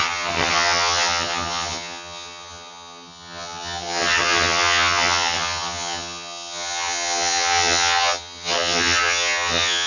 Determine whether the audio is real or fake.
fake